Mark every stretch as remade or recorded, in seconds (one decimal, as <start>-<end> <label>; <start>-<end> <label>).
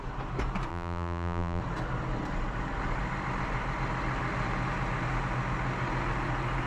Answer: 0.0-0.7 recorded; 0.7-1.6 remade; 1.6-6.7 recorded